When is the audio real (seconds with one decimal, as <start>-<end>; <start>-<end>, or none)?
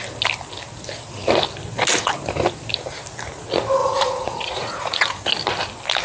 0.0-3.8; 5.2-6.0